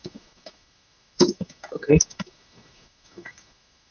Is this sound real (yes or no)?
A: no